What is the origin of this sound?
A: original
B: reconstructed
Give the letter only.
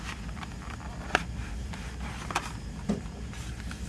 A